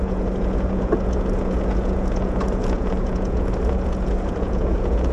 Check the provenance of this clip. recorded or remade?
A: remade